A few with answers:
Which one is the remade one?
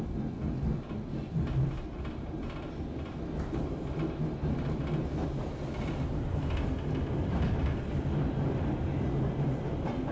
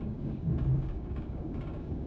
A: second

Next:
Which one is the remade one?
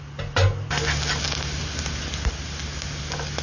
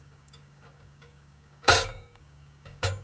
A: second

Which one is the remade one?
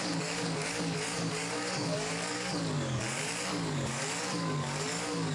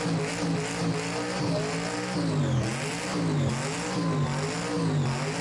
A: first